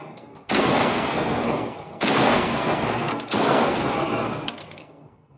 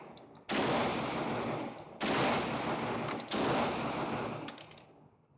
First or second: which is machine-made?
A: first